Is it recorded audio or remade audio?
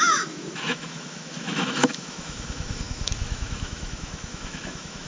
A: remade